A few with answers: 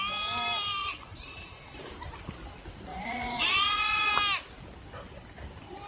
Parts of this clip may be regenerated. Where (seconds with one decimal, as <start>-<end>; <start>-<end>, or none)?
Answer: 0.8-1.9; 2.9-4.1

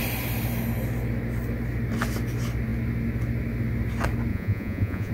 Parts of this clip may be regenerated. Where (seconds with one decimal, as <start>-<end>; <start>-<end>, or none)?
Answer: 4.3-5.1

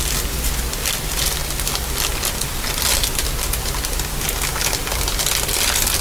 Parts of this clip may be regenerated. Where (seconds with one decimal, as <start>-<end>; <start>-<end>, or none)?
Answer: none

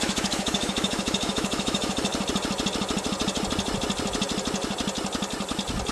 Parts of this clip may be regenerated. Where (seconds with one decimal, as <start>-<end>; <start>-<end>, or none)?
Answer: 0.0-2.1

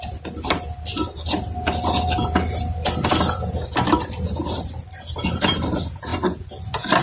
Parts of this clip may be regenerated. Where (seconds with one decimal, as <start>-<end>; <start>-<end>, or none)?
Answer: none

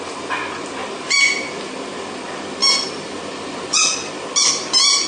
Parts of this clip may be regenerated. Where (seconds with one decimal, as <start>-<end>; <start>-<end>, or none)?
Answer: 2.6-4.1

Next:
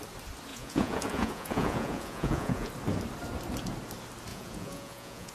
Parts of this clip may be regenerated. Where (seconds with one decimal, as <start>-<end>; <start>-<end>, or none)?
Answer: 0.5-2.7; 4.3-5.3

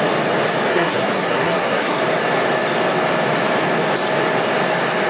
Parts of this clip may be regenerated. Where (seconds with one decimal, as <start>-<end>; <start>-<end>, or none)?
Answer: 0.7-2.0